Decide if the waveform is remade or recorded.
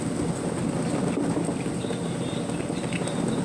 recorded